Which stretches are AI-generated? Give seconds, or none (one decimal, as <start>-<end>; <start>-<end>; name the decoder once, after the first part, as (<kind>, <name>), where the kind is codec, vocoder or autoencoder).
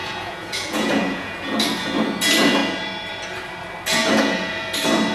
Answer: 0.0-1.3 (vocoder, Vocos)